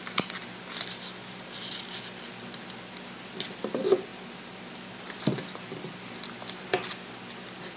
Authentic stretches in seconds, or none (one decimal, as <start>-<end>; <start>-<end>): 0.0-7.8